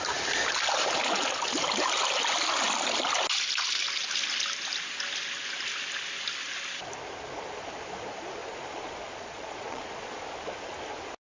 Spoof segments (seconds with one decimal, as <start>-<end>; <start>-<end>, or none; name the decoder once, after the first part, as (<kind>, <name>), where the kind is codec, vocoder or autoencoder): 8.4-10.2 (vocoder, Vocos)